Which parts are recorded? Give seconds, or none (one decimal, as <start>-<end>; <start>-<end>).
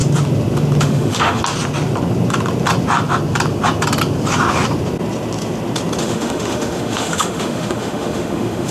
0.0-0.8; 1.4-6.0